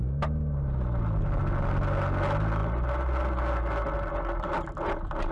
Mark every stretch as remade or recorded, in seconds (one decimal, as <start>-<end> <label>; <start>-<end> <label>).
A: 0.0-5.3 recorded